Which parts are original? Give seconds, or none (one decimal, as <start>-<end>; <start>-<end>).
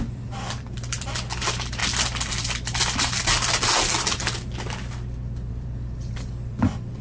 1.8-5.5